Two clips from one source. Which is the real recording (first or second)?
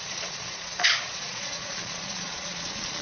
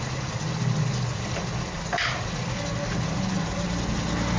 second